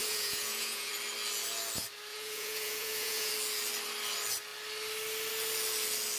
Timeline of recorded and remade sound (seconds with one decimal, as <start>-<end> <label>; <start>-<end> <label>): 0.0-0.9 remade; 0.9-2.1 recorded; 2.1-3.3 remade; 3.3-6.2 recorded